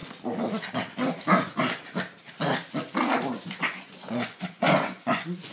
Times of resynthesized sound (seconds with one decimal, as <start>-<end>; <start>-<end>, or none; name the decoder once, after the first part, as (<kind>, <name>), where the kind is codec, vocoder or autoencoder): 3.3-5.5 (vocoder, Vocos)

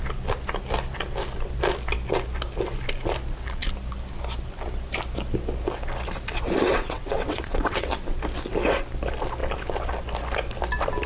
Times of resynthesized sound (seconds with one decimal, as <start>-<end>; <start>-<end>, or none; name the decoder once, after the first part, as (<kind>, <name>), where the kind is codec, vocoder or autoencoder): 6.7-7.9 (vocoder, WaveNeXt)

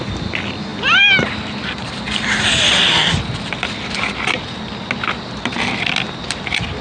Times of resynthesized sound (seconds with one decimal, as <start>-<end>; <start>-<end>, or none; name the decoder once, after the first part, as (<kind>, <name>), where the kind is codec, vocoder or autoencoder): none

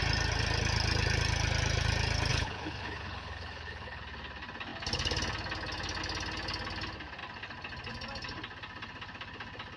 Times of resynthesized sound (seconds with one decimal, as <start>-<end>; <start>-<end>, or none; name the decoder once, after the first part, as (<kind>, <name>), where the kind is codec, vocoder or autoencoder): 2.3-4.0 (codec, HILCodec)

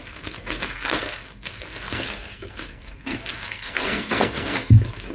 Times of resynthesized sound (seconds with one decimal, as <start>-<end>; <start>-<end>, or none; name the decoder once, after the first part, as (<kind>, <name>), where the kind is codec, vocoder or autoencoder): 0.0-5.1 (codec, SNAC)

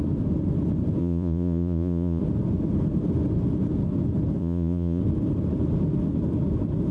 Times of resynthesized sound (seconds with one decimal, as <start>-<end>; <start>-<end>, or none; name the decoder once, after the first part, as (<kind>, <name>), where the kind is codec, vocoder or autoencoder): 1.0-2.2 (vocoder, Vocos); 4.4-5.0

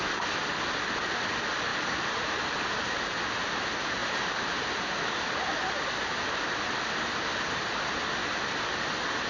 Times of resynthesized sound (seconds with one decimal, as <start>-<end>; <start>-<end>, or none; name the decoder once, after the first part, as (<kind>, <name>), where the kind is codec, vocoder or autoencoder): 1.7-3.2 (vocoder, BigVGAN v2); 4.0-5.2